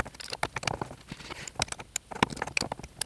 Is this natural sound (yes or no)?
yes